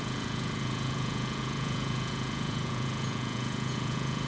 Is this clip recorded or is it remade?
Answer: remade